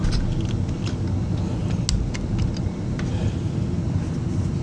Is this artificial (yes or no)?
no